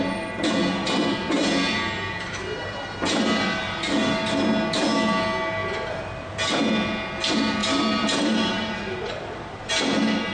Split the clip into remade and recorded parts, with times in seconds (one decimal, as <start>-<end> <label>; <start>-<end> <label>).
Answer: 0.0-7.6 recorded; 7.6-9.6 remade; 9.6-10.3 recorded